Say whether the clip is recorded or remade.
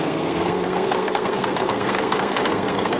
remade